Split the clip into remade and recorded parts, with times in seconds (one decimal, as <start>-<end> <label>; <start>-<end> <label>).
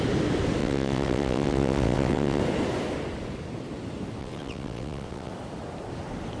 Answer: 0.0-0.6 recorded; 0.6-2.4 remade; 2.4-4.2 recorded; 4.2-5.3 remade; 5.3-6.4 recorded